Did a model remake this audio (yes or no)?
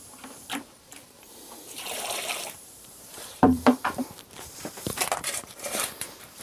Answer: yes